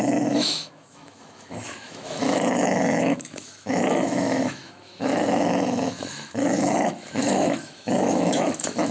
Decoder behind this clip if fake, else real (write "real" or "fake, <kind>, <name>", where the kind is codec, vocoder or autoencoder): fake, autoencoder, DAC-VAE